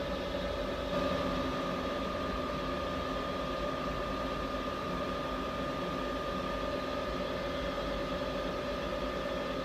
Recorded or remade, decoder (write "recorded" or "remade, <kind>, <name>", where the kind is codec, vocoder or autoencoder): recorded